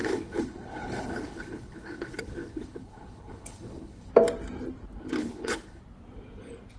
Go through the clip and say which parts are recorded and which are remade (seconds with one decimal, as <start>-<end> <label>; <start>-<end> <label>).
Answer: 0.0-4.1 remade; 4.1-5.2 recorded; 5.2-5.8 remade; 5.8-6.8 recorded